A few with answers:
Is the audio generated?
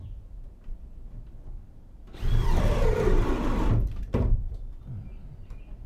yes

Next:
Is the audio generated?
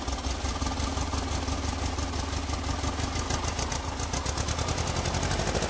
no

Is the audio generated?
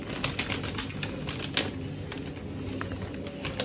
no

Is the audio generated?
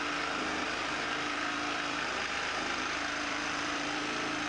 yes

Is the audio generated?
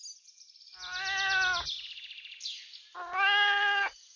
no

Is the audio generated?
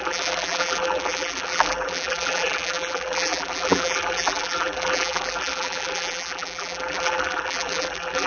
yes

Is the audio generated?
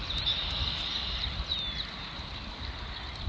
no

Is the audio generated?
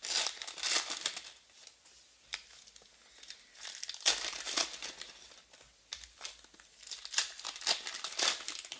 no